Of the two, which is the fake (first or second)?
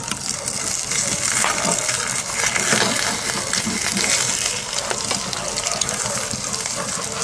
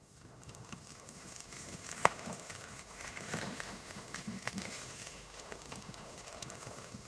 second